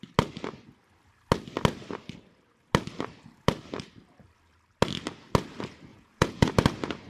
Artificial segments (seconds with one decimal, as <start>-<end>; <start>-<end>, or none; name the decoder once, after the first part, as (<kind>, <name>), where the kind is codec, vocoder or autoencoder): 5.9-6.5 (vocoder, Vocos)